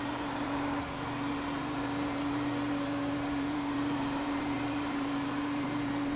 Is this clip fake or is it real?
fake